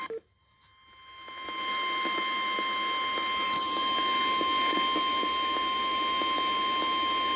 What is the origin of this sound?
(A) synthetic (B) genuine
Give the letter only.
B